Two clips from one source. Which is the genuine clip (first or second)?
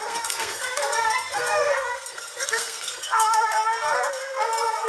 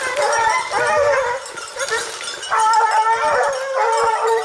second